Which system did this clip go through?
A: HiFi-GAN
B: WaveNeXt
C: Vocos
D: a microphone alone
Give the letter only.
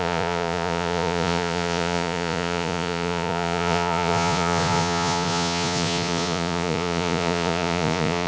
C